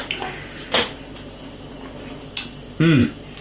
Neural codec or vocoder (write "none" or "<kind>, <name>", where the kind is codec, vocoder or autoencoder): none